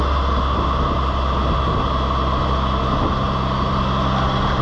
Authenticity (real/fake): real